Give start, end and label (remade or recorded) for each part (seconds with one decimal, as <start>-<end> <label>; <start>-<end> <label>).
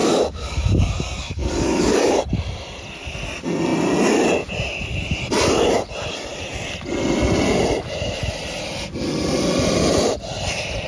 0.0-2.2 remade; 2.2-10.9 recorded